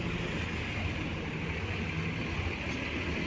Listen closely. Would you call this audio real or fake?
real